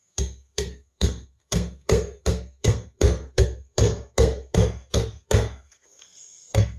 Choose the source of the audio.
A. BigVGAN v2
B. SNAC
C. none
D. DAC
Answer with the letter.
B